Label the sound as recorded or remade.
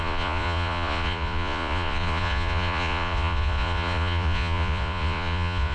remade